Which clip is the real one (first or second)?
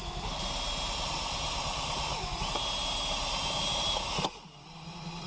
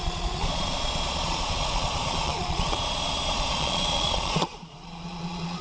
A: first